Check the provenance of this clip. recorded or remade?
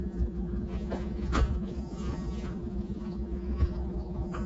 remade